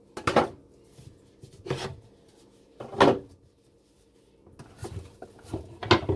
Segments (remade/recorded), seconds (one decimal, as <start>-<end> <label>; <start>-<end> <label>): 0.0-6.2 recorded